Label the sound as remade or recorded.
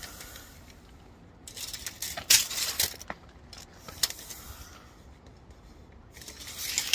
recorded